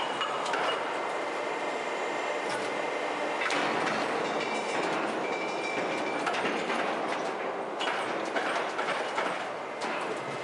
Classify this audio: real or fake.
real